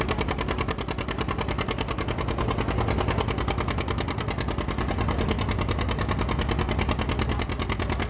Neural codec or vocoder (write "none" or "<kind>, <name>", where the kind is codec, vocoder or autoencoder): none